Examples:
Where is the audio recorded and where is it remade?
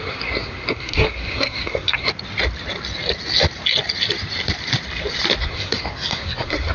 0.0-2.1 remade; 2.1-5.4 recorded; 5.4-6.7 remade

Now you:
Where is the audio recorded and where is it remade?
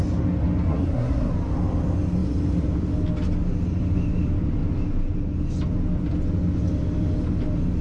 0.0-0.7 recorded; 0.7-1.3 remade; 1.3-7.8 recorded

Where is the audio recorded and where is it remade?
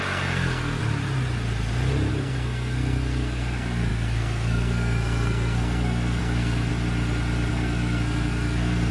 0.0-0.8 remade; 0.8-2.1 recorded; 2.1-6.7 remade; 6.7-7.5 recorded; 7.5-8.9 remade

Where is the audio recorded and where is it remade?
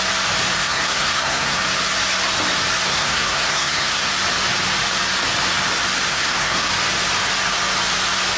0.0-0.6 recorded; 0.6-1.6 remade; 1.6-2.9 recorded; 2.9-4.1 remade; 4.1-6.1 recorded; 6.1-6.7 remade; 6.7-8.4 recorded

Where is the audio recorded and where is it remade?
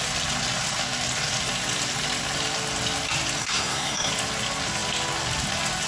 0.0-3.4 recorded; 3.4-4.1 remade; 4.1-5.9 recorded